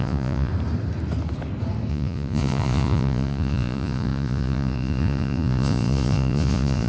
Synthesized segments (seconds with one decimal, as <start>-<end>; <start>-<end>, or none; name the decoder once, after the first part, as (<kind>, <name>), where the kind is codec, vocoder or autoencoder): 0.0-0.5 (vocoder, Vocos); 1.9-6.9